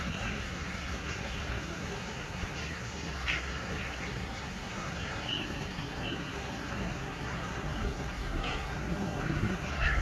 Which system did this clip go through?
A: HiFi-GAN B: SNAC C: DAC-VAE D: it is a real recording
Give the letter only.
B